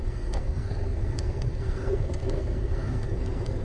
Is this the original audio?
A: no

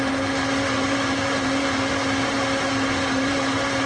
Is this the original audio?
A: yes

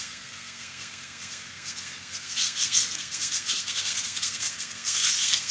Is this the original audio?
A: no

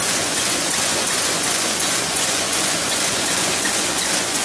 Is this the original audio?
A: no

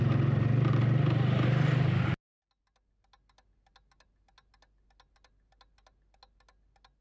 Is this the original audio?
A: yes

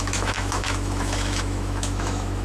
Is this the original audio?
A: no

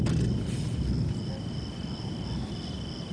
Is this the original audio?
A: yes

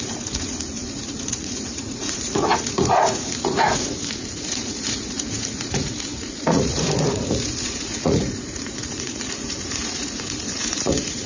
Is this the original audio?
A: no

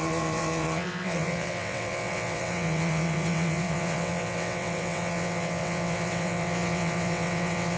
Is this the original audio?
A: no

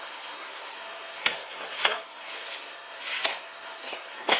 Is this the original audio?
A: no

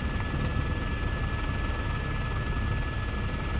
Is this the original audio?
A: yes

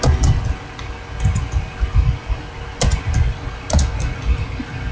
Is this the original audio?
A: yes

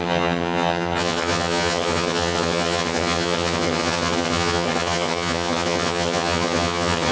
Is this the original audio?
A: no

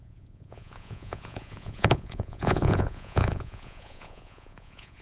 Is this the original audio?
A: no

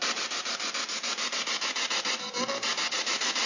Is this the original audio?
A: yes